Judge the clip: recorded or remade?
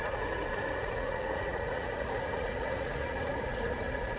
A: remade